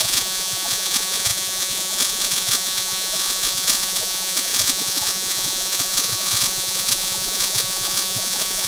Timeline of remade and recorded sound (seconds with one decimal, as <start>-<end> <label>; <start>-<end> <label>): 0.0-8.7 remade